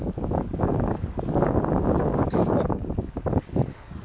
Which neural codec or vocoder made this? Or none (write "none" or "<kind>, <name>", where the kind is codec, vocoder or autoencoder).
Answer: codec, DAC